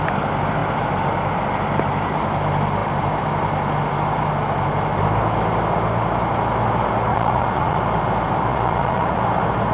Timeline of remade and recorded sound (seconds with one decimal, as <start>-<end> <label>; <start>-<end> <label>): 0.0-7.1 recorded; 7.1-7.8 remade; 7.8-8.5 recorded; 8.5-9.2 remade; 9.2-9.7 recorded